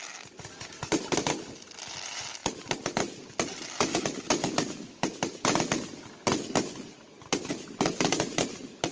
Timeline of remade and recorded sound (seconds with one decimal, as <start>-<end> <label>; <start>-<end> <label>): 0.0-8.9 recorded